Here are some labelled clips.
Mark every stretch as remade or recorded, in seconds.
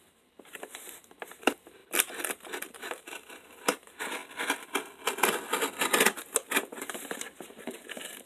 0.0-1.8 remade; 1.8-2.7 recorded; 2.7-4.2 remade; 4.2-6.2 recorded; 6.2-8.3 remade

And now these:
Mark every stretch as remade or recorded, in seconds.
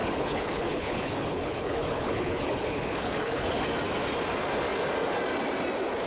0.0-3.6 remade; 3.6-6.1 recorded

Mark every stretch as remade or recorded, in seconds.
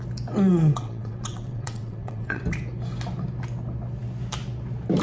0.0-0.5 recorded; 0.5-2.4 remade; 2.4-5.0 recorded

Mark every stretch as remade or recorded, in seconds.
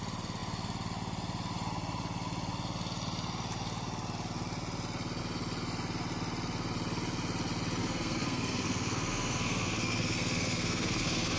0.0-7.8 recorded; 7.8-11.4 remade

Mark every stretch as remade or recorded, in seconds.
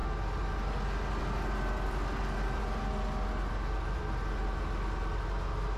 0.0-5.8 recorded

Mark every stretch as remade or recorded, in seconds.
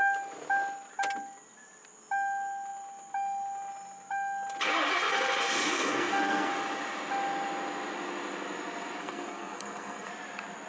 0.0-5.7 recorded; 5.7-6.5 remade; 6.5-9.0 recorded; 9.0-10.1 remade; 10.1-10.7 recorded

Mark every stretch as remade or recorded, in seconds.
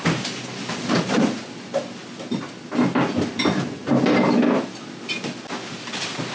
0.0-6.3 recorded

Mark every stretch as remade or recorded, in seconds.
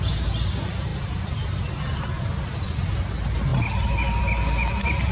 0.0-0.9 recorded; 0.9-2.8 remade; 2.8-3.5 recorded; 3.5-4.2 remade; 4.2-5.1 recorded